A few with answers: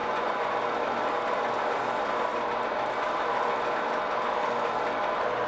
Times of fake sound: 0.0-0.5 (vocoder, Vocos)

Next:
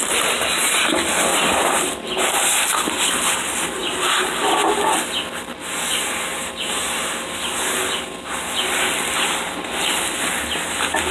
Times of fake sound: 1.3-2.4 (vocoder, BigVGAN v2); 5.9-7.2

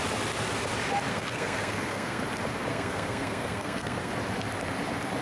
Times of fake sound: 1.1-2.2 (codec, SNAC); 2.7-4.1

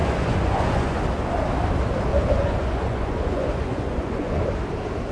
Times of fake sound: 0.0-1.0 (vocoder, Vocos); 2.1-4.4

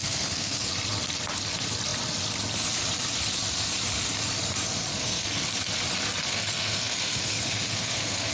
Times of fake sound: 0.0-0.7 (codec, SNAC); 4.9-5.4; 6.3-8.3

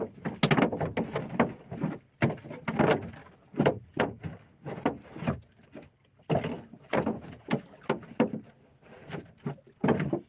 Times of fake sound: 3.2-3.8 (vocoder, BigVGAN v2)

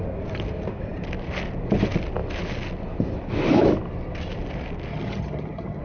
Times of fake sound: 4.9-5.8 (vocoder, HiFi-GAN)